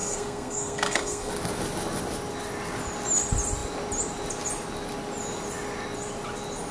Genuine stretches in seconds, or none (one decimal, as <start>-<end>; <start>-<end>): 1.3-6.7

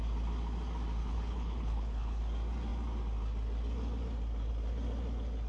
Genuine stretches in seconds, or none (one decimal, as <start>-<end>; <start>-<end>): 0.0-1.0; 2.2-5.5

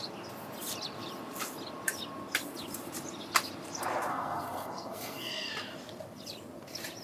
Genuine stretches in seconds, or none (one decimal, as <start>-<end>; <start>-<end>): 0.0-4.1; 5.5-7.0

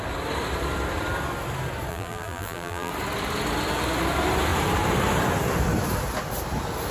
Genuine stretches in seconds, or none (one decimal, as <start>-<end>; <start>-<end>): 0.0-1.9; 2.9-6.9